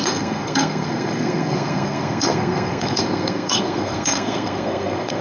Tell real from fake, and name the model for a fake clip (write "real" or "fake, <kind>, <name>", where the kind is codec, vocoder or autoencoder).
fake, codec, SNAC